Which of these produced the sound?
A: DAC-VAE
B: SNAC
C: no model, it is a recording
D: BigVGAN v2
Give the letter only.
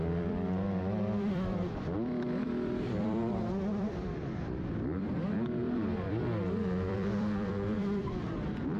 D